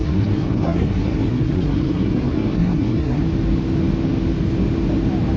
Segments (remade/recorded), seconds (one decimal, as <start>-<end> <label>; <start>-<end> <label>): 0.0-3.2 remade; 3.2-5.4 recorded

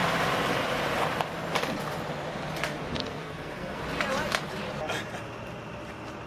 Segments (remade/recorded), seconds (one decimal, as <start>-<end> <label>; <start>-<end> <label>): 0.0-3.0 recorded; 3.0-3.8 remade; 3.8-6.3 recorded